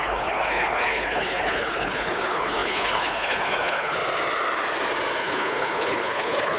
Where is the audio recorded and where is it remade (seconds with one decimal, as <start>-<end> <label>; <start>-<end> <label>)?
0.0-4.0 remade; 4.0-5.2 recorded; 5.2-6.6 remade